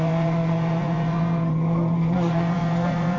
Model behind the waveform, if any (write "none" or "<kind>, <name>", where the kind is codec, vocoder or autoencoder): vocoder, Vocos